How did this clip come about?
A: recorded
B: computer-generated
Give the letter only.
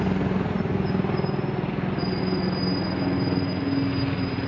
A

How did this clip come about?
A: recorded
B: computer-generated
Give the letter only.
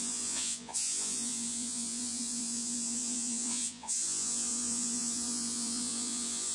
B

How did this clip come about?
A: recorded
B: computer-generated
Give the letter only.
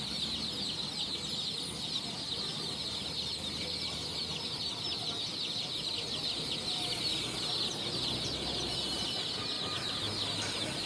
A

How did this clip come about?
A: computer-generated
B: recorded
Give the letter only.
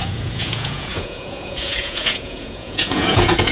A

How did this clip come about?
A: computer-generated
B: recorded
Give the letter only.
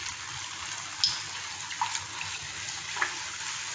B